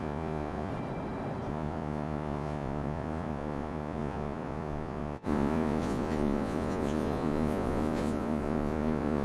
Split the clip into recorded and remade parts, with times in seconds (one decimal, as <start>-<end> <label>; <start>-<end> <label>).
0.0-0.7 remade; 0.7-1.5 recorded; 1.5-9.2 remade